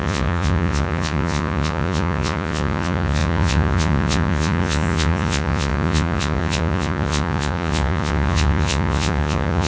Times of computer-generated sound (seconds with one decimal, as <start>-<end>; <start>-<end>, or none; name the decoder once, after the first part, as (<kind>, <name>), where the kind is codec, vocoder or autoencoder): 0.0-9.7 (vocoder, Vocos)